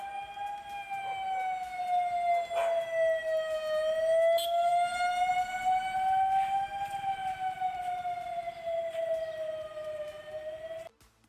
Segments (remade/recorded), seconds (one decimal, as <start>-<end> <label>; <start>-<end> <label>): 0.0-7.2 recorded; 7.2-8.3 remade; 8.3-8.8 recorded; 8.8-10.6 remade; 10.6-11.3 recorded